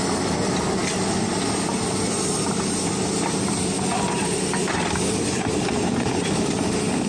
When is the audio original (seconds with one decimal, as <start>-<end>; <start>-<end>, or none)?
0.0-7.1